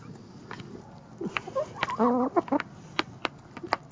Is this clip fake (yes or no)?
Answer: no